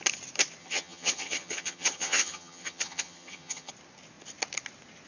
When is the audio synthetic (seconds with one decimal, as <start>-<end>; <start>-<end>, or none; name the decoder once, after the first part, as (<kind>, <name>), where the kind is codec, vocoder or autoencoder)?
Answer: 0.6-3.7 (vocoder, HiFi-GAN)